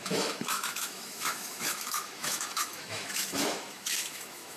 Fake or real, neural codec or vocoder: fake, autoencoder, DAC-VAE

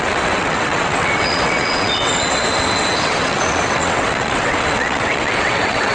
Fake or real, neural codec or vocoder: fake, vocoder, WaveNeXt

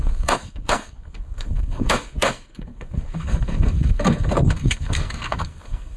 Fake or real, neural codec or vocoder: fake, codec, SNAC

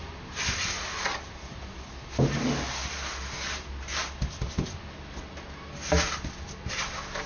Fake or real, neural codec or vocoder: real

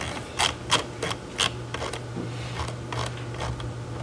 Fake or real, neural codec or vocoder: real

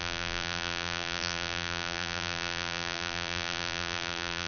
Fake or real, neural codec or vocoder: fake, vocoder, BigVGAN v2